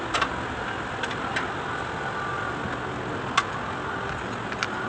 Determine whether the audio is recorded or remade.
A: recorded